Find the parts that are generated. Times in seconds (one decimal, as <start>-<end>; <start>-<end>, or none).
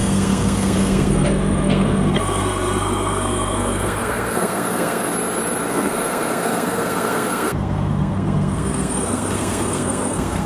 0.0-5.1; 5.7-10.5